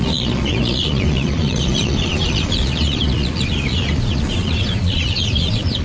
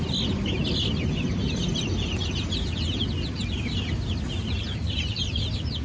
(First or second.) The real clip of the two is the second